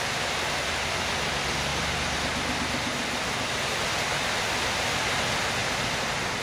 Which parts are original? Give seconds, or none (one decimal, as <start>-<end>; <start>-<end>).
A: 0.0-6.4